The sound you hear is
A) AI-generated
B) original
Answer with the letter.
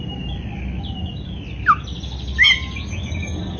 B